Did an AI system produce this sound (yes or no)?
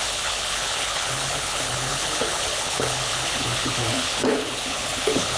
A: yes